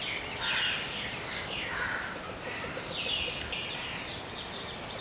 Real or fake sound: real